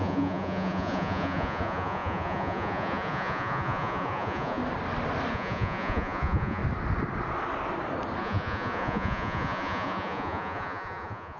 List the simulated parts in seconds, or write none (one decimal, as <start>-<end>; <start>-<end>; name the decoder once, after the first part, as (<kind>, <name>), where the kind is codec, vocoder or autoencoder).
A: 0.0-4.6 (vocoder, Vocos); 5.3-6.6; 8.2-11.4